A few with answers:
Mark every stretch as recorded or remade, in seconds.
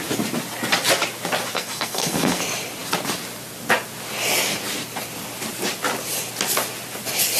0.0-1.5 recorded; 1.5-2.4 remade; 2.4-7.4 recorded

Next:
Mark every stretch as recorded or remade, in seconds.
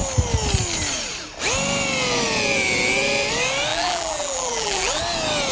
0.0-3.7 recorded; 3.7-5.0 remade; 5.0-5.5 recorded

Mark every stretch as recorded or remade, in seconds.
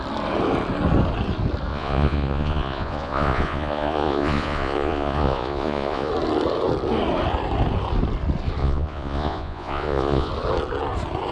0.0-1.7 recorded; 1.7-6.1 remade; 6.1-8.6 recorded; 8.6-10.3 remade; 10.3-11.3 recorded